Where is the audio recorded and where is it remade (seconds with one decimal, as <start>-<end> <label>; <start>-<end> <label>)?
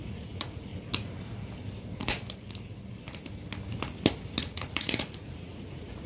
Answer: 0.0-0.7 remade; 0.7-4.4 recorded; 4.4-6.1 remade